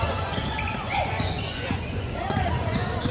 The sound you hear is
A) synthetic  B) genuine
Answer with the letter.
A